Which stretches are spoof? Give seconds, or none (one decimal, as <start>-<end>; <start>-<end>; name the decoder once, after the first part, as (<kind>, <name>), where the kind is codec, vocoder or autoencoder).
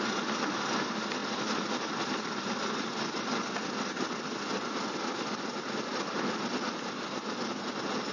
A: none